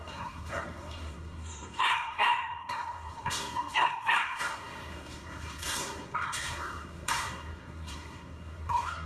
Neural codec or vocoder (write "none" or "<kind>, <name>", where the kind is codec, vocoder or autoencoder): codec, SNAC